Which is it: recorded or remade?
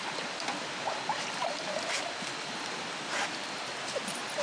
recorded